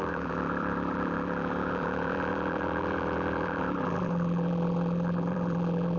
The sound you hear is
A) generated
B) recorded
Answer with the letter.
A